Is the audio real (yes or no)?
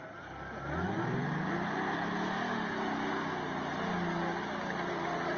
yes